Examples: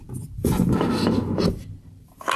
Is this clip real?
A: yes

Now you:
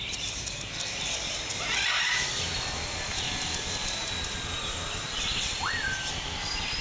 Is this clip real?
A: no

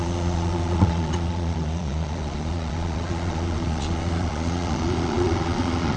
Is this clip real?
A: no